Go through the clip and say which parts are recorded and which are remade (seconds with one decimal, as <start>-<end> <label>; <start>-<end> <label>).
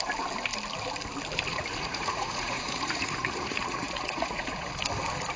0.0-1.5 recorded; 1.5-4.7 remade; 4.7-5.4 recorded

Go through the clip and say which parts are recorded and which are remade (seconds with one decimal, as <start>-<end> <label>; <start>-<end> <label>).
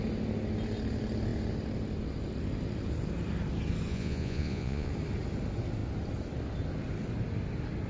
0.0-3.9 recorded; 3.9-4.9 remade; 4.9-7.9 recorded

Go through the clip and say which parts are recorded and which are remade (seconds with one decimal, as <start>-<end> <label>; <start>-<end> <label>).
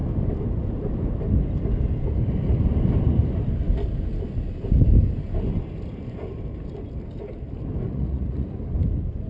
0.0-7.9 recorded; 7.9-8.5 remade; 8.5-9.3 recorded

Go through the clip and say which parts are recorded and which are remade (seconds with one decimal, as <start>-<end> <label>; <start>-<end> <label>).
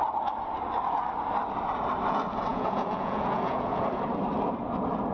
0.0-2.5 recorded; 2.5-3.8 remade; 3.8-5.1 recorded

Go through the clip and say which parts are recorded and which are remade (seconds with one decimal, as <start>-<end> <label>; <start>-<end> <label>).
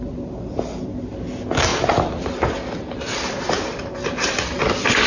0.0-5.1 recorded